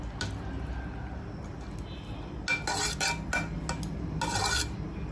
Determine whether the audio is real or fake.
real